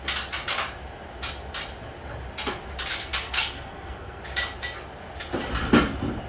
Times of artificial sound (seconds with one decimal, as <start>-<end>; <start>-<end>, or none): 2.9-4.2